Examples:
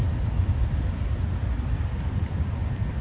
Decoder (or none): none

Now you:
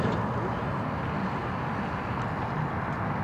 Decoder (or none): none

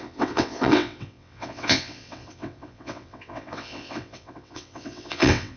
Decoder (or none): vocoder, WaveNeXt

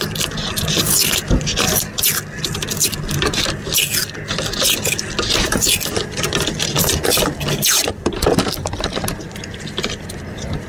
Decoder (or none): none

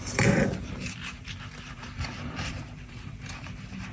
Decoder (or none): vocoder, BigVGAN v2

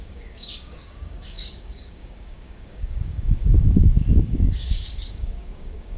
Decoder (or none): codec, DAC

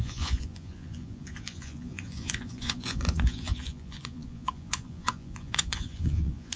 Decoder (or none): vocoder, Vocos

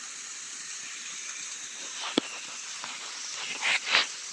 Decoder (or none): none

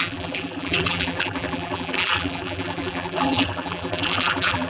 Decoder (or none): vocoder, BigVGAN v2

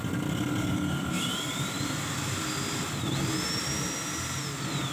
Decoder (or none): none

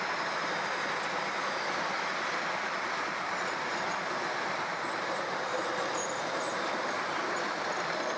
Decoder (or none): none